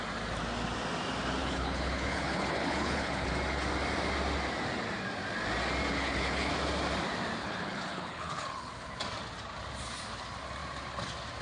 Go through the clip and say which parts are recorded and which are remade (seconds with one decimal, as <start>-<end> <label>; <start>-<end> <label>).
0.0-1.4 recorded; 1.4-3.3 remade; 3.3-5.9 recorded; 5.9-6.5 remade; 6.5-7.4 recorded; 7.4-8.9 remade; 8.9-11.4 recorded